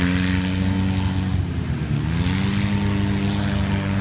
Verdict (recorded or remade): recorded